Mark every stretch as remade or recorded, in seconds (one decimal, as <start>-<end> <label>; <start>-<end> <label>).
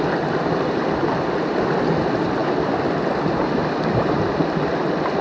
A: 0.0-5.2 recorded